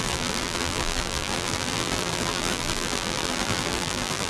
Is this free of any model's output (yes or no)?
no